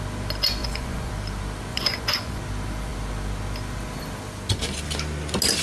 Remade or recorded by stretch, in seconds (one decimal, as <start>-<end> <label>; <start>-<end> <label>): 0.0-0.6 recorded; 0.6-1.1 remade; 1.1-1.7 recorded; 1.7-2.4 remade; 2.4-5.6 recorded